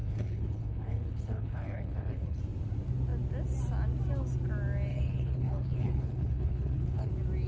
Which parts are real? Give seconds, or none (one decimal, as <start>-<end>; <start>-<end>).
2.4-4.9; 7.1-7.5